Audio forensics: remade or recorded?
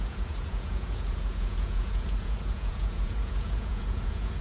remade